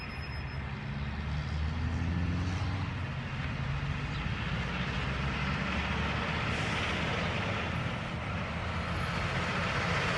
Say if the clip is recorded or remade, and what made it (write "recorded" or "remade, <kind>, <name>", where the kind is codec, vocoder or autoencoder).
recorded